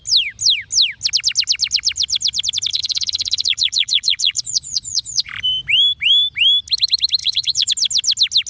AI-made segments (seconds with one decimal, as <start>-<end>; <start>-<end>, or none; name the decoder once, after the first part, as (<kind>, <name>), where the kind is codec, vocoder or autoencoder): 2.7-5.3 (vocoder, Vocos); 7.2-7.7